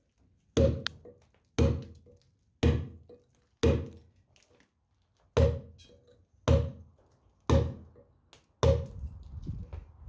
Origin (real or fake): real